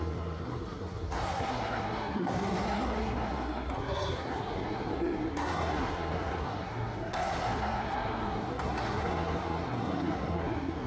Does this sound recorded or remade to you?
remade